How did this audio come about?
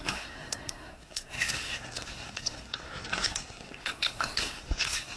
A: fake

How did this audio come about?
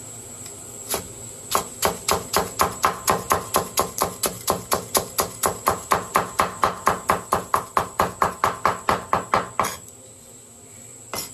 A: real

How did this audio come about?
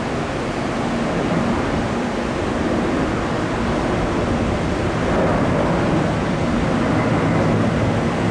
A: real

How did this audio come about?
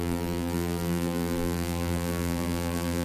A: fake